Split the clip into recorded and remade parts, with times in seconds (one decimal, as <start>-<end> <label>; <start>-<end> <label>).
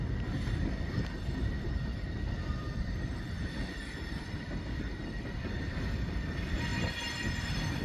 0.0-7.8 remade